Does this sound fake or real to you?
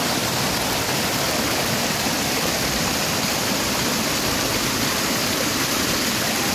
real